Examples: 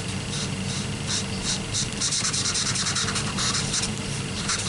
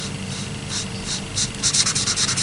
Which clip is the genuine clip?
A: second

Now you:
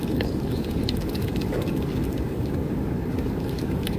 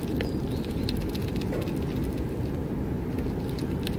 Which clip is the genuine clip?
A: second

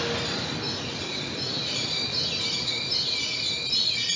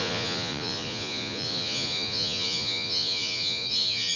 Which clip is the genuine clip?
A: first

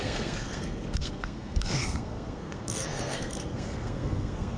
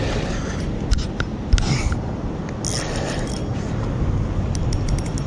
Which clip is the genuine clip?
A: second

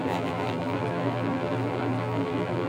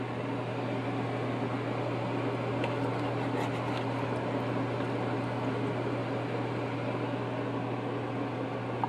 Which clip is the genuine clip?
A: second